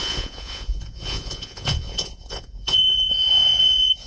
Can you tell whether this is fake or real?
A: fake